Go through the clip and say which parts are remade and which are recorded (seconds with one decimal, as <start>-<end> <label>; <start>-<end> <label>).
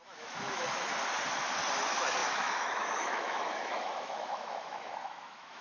0.0-0.9 remade; 0.9-1.8 recorded; 1.8-5.6 remade